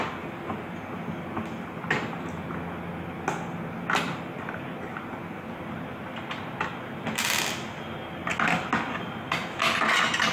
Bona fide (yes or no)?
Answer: yes